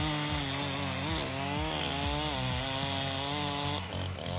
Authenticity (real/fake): real